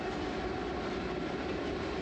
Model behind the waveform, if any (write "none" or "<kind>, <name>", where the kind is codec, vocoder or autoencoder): none